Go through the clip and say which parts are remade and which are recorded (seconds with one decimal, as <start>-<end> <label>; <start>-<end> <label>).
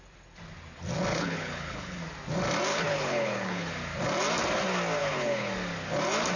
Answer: 0.0-1.1 recorded; 1.1-2.0 remade; 2.0-2.7 recorded; 2.7-3.7 remade; 3.7-5.0 recorded; 5.0-5.5 remade; 5.5-6.4 recorded